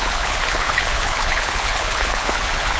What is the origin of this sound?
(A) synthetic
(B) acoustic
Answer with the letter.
A